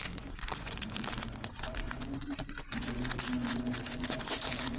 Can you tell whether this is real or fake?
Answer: fake